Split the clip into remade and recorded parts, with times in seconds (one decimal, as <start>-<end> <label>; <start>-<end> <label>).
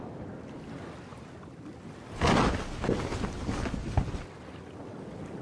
0.0-5.4 recorded